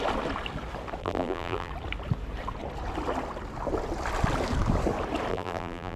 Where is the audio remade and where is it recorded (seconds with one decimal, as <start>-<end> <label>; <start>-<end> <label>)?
0.0-1.0 recorded; 1.0-1.7 remade; 1.7-5.3 recorded; 5.3-6.0 remade